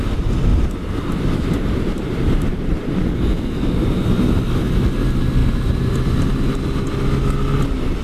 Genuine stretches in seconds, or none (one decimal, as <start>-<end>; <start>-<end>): 0.0-0.5; 3.1-3.8; 4.4-5.4; 6.0-8.0